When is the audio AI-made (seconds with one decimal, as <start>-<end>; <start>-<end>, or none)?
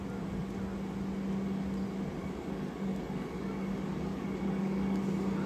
2.2-5.0